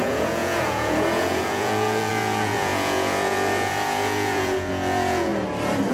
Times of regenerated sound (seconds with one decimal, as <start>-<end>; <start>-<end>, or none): 0.0-5.3